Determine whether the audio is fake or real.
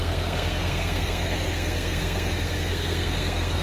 fake